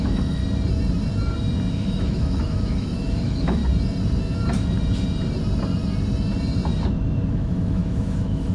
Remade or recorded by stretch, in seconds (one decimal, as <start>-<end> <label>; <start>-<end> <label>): 0.0-0.4 remade; 0.4-1.7 recorded; 1.7-3.6 remade; 3.6-7.3 recorded; 7.3-8.5 remade